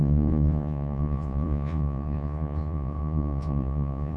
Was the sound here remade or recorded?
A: remade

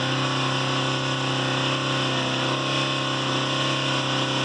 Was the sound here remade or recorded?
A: recorded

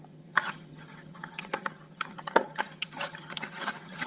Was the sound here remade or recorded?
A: remade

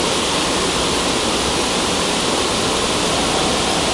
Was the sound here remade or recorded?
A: recorded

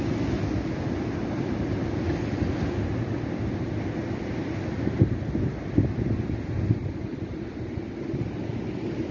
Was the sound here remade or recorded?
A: recorded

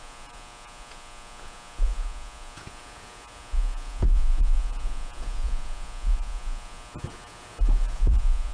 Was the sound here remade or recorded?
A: remade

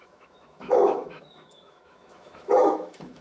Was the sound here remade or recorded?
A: remade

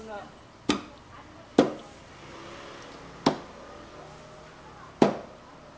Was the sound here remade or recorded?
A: recorded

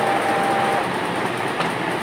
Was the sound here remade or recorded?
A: recorded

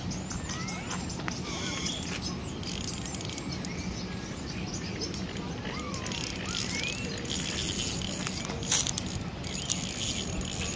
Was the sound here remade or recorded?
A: recorded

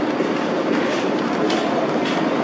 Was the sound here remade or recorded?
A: recorded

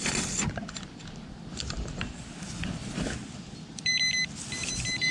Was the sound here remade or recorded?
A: remade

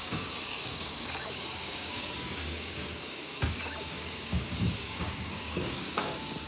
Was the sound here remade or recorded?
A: remade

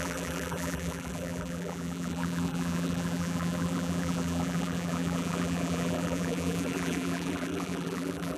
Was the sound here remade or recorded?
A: remade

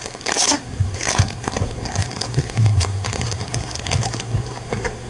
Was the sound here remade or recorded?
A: remade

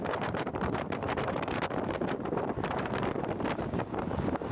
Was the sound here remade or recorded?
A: remade